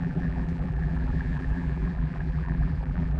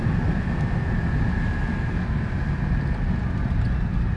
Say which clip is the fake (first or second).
first